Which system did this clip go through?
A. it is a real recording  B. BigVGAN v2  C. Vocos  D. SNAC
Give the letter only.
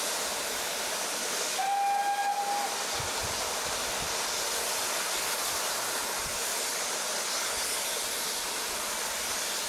A